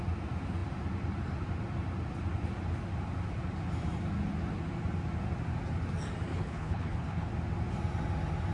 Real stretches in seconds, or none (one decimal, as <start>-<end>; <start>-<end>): 0.0-6.3; 7.3-8.5